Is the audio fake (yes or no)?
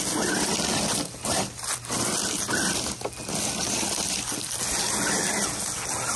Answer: no